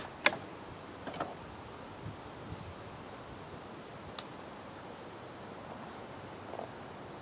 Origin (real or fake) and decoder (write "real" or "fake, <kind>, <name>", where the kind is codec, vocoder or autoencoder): real